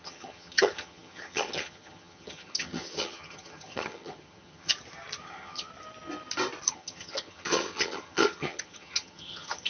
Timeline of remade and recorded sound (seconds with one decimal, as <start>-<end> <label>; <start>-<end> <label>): 0.0-4.7 remade; 4.7-5.2 recorded; 5.2-5.7 remade; 5.7-6.7 recorded; 6.7-9.7 remade